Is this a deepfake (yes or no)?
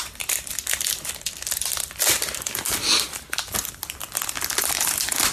no